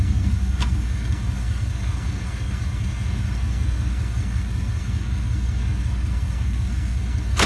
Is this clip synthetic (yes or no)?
yes